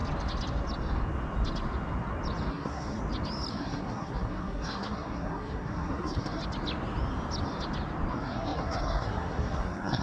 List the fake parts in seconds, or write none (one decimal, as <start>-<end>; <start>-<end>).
2.5-3.0; 3.5-6.4; 8.1-10.0